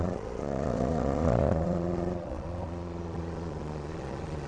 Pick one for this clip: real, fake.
fake